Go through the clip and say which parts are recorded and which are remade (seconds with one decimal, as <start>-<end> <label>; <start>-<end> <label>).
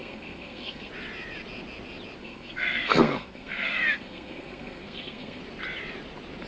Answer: 0.0-0.9 remade; 0.9-2.2 recorded; 2.2-5.4 remade; 5.4-6.5 recorded